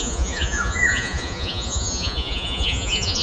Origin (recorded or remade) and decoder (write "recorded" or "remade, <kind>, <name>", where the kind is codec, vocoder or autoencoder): remade, vocoder, Vocos